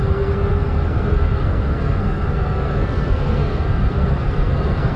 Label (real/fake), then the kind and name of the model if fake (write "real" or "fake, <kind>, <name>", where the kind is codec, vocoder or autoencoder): fake, codec, SNAC